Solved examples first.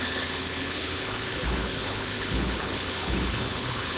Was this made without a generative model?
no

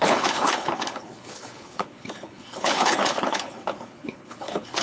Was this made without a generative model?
no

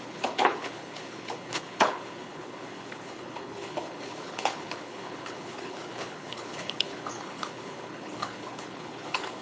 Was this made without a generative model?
no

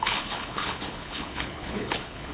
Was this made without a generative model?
no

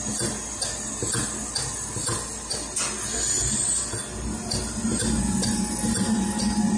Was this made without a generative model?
yes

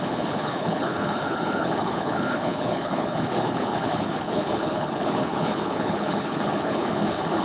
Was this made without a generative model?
no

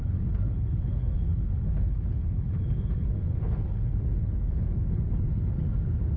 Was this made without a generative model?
no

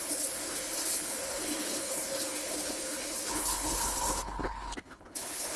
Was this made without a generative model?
no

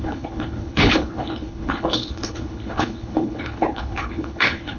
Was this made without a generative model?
no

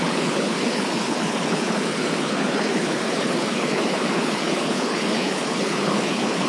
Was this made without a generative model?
no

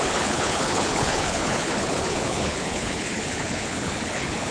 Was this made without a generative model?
no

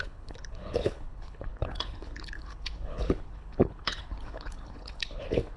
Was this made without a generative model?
no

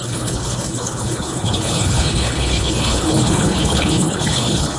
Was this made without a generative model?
no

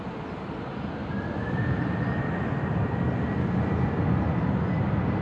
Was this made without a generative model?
yes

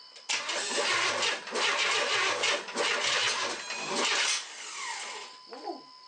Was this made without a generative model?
yes